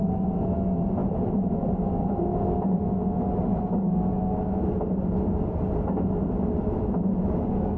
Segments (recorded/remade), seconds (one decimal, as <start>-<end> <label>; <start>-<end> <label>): 0.0-1.0 recorded; 1.0-2.3 remade; 2.3-7.8 recorded